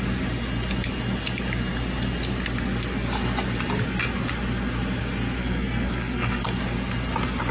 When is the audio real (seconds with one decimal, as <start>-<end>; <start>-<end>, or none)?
0.0-5.4; 6.5-7.5